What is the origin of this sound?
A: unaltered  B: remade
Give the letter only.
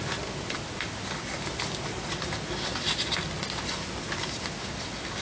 A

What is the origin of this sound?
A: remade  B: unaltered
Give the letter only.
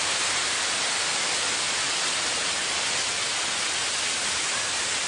B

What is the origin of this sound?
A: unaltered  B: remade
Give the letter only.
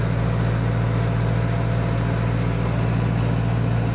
A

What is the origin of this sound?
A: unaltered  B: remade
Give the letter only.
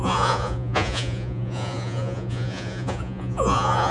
B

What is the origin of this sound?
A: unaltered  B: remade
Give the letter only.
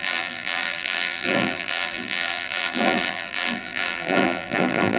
B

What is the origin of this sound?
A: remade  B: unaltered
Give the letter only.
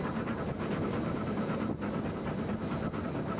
B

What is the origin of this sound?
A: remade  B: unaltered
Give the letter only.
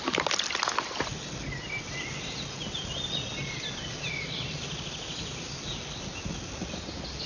B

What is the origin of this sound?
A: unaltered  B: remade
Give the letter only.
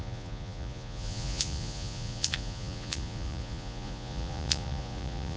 B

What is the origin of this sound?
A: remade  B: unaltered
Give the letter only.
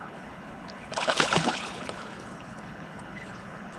A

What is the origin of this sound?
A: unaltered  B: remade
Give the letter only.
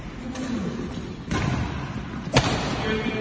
A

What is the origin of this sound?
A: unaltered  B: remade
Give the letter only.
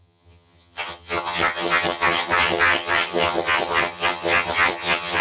B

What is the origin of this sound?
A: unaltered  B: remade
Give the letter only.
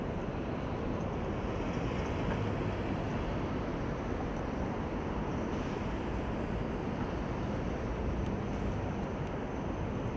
A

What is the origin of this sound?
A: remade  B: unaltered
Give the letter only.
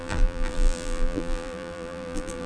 A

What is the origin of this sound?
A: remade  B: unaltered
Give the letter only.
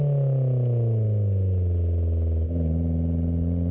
B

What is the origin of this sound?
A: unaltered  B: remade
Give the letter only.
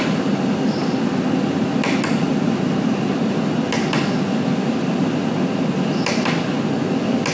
A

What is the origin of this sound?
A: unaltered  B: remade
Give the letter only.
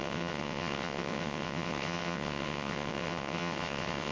B